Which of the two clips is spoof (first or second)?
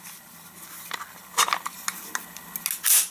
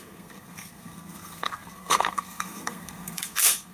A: second